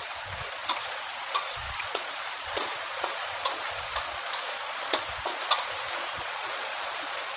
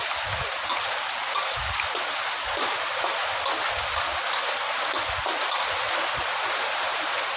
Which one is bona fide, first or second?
second